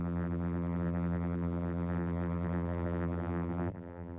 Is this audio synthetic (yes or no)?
yes